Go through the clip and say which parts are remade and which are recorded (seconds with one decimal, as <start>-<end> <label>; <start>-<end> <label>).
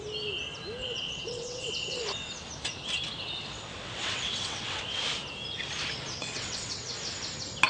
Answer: 0.0-0.8 recorded; 0.8-2.0 remade; 2.0-3.4 recorded; 3.4-5.0 remade; 5.0-6.1 recorded; 6.1-7.0 remade; 7.0-7.7 recorded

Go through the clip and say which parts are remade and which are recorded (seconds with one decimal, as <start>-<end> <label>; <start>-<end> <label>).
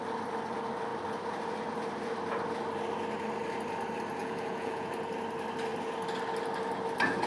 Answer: 0.0-4.2 recorded; 4.2-4.9 remade; 4.9-7.3 recorded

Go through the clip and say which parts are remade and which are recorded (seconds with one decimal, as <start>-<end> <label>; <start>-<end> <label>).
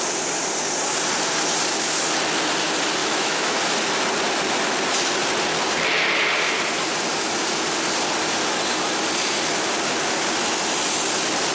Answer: 0.0-3.0 recorded; 3.0-3.6 remade; 3.6-11.5 recorded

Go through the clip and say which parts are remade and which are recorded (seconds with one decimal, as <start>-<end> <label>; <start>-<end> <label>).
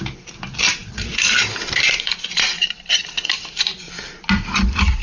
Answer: 0.0-0.8 recorded; 0.8-3.4 remade; 3.4-5.0 recorded